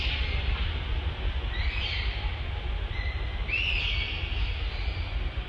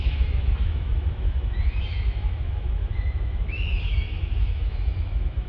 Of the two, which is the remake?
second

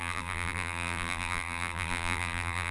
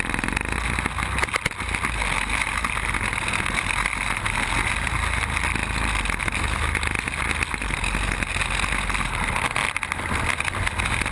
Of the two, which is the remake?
first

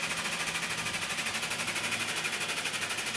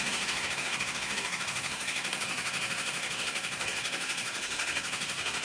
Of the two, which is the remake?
second